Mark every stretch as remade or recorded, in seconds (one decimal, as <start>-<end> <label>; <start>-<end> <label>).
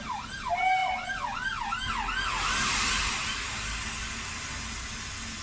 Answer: 0.0-5.4 recorded